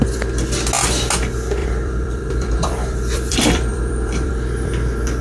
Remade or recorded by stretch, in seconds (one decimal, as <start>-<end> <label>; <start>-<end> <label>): 0.0-1.6 recorded; 1.6-4.3 remade; 4.3-5.2 recorded